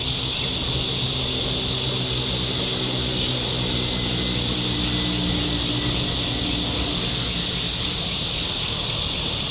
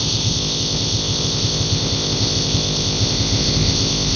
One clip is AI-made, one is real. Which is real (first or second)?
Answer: first